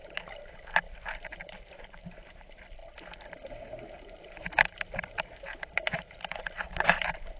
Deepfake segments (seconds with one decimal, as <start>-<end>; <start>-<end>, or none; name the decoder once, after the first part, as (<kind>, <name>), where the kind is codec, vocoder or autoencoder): 1.8-2.8 (vocoder, BigVGAN v2); 5.1-7.4

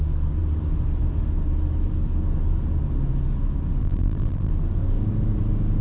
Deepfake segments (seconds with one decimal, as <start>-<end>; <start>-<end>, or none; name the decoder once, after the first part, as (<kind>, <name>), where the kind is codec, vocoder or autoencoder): 3.8-4.5 (vocoder, BigVGAN v2)

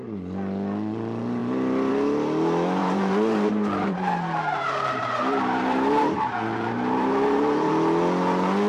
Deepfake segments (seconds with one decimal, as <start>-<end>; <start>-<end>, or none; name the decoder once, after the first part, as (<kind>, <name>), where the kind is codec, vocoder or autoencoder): 2.8-7.7 (vocoder, BigVGAN v2)

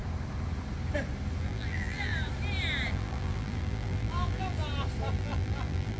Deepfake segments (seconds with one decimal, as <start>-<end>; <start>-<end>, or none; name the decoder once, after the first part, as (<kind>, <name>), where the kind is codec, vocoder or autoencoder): 1.4-2.1 (vocoder, BigVGAN v2); 2.9-4.6; 5.1-6.0